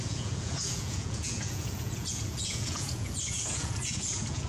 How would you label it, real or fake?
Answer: fake